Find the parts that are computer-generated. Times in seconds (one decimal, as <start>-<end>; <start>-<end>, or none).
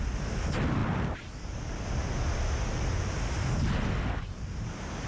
none